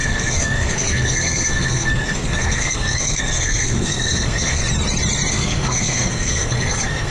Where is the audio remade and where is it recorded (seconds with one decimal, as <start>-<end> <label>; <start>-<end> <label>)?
0.0-4.6 remade; 4.6-5.3 recorded; 5.3-7.1 remade